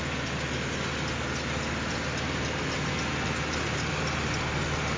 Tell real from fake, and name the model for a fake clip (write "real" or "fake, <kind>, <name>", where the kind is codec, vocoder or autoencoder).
real